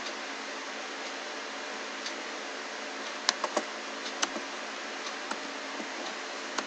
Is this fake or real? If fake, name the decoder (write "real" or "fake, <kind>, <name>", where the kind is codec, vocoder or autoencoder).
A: real